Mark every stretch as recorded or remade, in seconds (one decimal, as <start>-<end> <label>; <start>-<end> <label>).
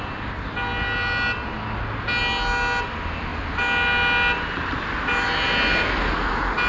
0.0-6.7 recorded